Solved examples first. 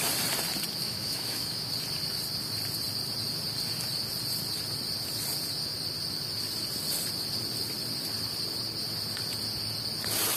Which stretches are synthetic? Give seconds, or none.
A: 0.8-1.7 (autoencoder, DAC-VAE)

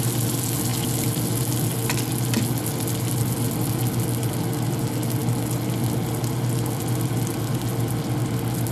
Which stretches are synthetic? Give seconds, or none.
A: none

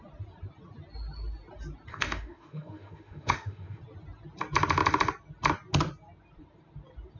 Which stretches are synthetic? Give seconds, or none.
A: 1.9-3.8 (autoencoder, DAC-VAE)

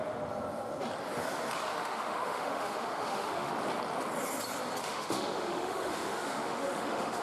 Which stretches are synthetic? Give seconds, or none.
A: 1.7-3.5 (autoencoder, DAC-VAE); 4.8-7.2

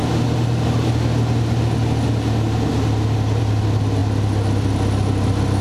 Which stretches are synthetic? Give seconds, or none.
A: none